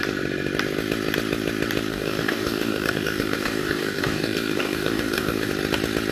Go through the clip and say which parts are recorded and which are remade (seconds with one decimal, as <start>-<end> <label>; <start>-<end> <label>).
0.0-1.9 recorded; 1.9-5.5 remade; 5.5-6.1 recorded